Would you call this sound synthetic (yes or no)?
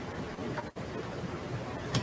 no